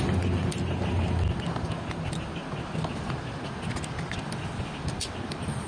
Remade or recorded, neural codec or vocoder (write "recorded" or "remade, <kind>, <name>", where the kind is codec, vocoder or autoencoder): recorded